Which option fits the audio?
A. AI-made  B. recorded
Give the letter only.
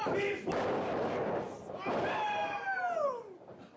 A